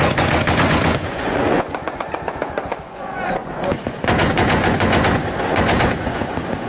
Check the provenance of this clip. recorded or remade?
remade